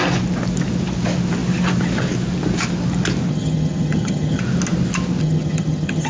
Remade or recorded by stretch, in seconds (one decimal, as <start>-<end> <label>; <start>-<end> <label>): 0.0-3.3 recorded; 3.3-4.4 remade; 4.4-5.2 recorded; 5.2-6.1 remade